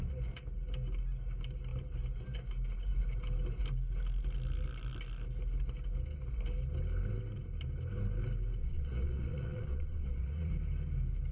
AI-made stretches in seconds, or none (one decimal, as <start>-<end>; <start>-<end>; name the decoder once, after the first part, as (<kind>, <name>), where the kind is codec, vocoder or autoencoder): 8.6-10.5 (vocoder, Vocos)